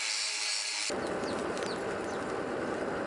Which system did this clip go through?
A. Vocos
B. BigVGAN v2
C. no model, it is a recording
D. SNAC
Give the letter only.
C